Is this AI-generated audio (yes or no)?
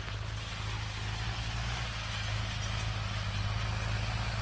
no